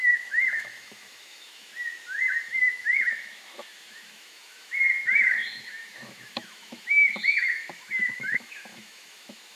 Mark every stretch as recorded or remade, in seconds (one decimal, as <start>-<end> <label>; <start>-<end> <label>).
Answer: 0.0-1.7 remade; 1.7-2.4 recorded; 2.4-9.6 remade